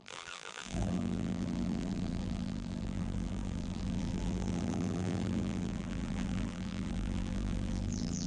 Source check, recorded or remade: remade